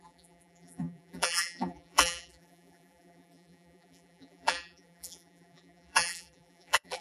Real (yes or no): no